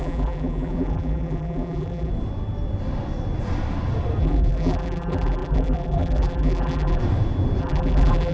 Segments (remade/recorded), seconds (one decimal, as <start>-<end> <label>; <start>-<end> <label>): 0.0-2.1 remade; 2.1-4.2 recorded; 4.2-7.0 remade; 7.0-7.6 recorded; 7.6-8.3 remade